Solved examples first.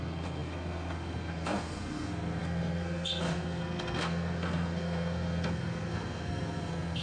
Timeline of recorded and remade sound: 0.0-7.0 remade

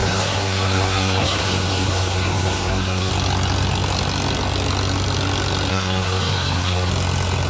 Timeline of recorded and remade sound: 0.0-3.1 remade; 3.1-5.7 recorded; 5.7-6.9 remade; 6.9-7.5 recorded

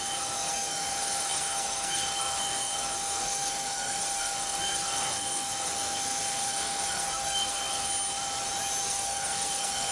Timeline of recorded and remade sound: 0.0-7.9 remade; 7.9-8.8 recorded; 8.8-9.9 remade

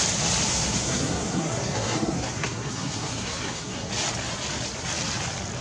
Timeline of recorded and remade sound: 0.0-0.5 recorded; 0.5-3.9 remade; 3.9-5.6 recorded

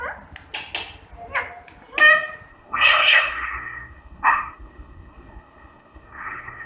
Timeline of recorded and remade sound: 0.0-2.5 recorded; 2.5-6.7 remade